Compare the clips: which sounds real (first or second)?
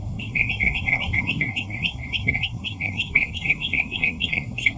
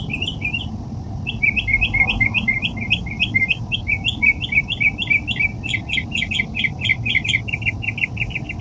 second